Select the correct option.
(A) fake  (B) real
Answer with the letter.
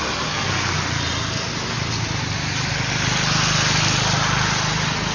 B